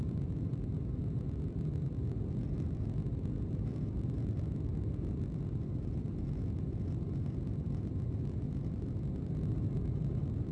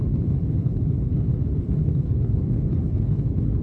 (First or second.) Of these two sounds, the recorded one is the first